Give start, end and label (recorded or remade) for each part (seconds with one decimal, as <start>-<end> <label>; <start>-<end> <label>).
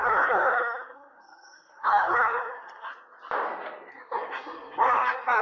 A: 0.0-2.9 remade; 2.9-3.9 recorded; 3.9-5.4 remade